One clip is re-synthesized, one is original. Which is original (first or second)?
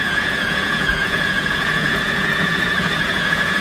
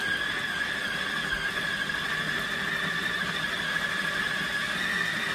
second